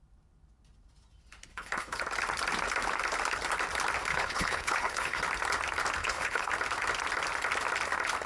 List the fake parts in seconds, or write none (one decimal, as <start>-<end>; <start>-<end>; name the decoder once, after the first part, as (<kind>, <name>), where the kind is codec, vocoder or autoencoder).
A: 1.5-2.0 (codec, HILCodec); 4.1-5.2; 6.0-6.5